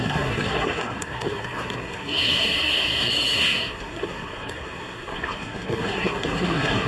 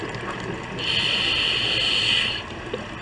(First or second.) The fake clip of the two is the first